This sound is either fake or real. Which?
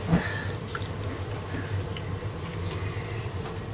real